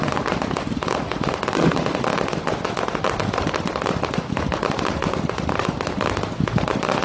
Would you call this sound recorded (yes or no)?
yes